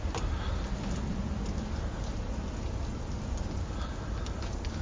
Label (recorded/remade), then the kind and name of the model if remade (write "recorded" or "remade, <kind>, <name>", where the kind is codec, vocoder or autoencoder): recorded